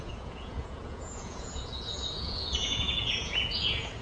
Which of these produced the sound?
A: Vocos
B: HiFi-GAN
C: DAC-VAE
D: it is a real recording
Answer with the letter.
A